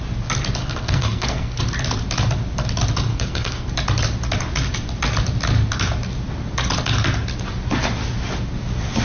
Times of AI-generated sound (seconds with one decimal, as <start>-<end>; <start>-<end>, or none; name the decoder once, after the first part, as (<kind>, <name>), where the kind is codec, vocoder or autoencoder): 0.6-1.6 (codec, SNAC); 3.1-3.7